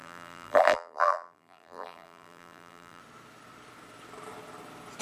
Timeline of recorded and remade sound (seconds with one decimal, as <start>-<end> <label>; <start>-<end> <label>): 0.0-3.0 remade; 3.0-5.0 recorded